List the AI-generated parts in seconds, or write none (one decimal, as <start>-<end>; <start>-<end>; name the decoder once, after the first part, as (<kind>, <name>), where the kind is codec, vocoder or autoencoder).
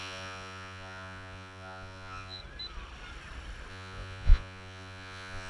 0.0-2.4 (vocoder, Vocos); 3.7-5.5